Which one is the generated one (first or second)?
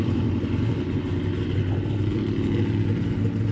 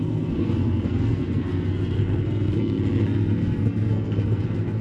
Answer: second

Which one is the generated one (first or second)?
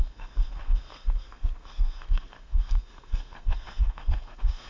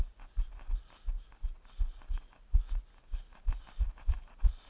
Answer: first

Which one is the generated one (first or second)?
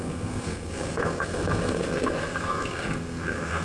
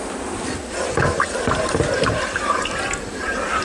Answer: first